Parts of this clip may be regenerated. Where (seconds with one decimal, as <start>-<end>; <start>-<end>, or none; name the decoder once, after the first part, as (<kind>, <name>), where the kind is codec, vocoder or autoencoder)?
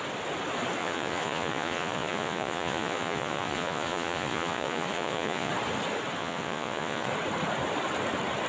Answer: 0.8-5.5 (vocoder, Vocos); 6.2-7.1